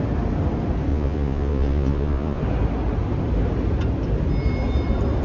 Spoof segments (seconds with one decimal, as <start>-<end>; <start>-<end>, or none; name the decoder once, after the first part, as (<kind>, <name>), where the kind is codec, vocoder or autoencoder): 0.9-2.4 (vocoder, Vocos)